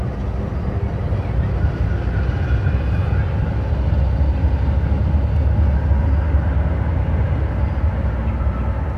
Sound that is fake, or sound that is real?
real